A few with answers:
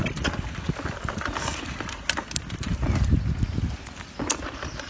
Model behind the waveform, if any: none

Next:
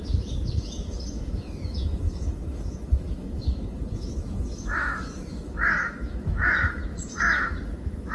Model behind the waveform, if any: autoencoder, DAC-VAE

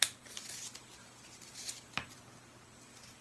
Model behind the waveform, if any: none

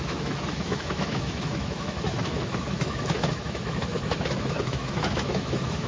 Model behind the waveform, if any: autoencoder, DAC-VAE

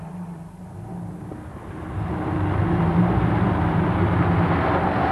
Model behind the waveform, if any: none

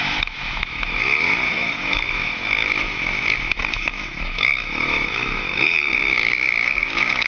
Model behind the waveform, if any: autoencoder, DAC-VAE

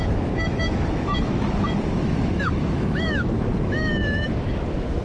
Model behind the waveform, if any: autoencoder, DAC-VAE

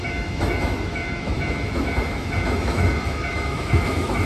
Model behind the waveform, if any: autoencoder, DAC-VAE